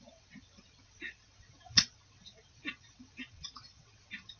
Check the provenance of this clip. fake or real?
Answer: fake